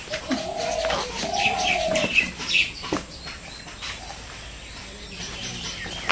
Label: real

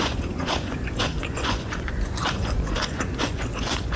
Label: fake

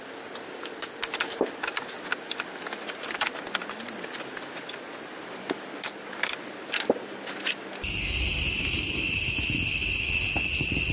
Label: real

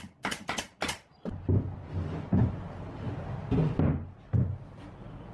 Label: real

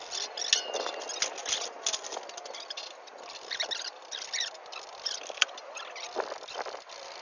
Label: real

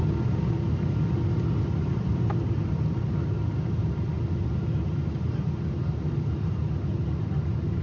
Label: real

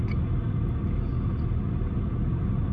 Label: real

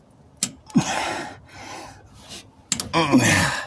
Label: real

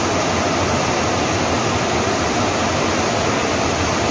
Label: real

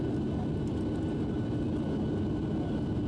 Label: real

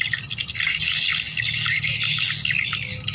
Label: real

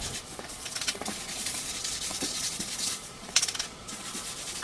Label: fake